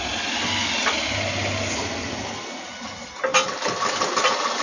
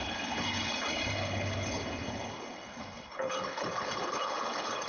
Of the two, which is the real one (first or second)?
first